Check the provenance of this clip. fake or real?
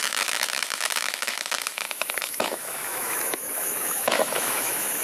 fake